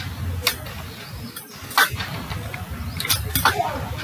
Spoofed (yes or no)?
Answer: no